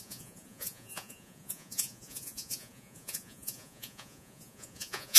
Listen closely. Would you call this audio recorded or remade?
remade